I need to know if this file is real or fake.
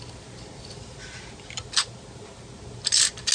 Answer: real